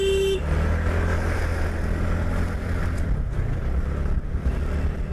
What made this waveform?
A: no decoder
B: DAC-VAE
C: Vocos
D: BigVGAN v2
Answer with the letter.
A